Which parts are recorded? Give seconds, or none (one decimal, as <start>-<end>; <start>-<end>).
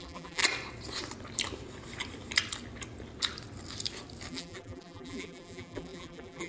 0.4-4.3